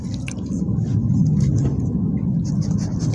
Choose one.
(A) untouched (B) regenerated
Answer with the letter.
A